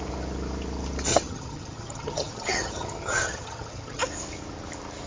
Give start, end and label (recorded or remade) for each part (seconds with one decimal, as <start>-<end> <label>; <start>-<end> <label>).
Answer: 0.0-1.1 recorded; 1.1-4.0 remade; 4.0-5.1 recorded